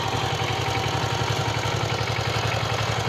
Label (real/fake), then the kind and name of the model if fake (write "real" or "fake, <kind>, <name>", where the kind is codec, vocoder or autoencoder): real